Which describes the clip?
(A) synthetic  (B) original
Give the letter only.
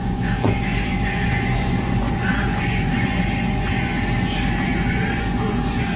A